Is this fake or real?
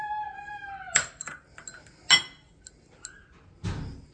real